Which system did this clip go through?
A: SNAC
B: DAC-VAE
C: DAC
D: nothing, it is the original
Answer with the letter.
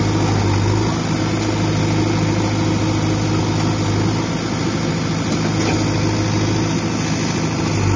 D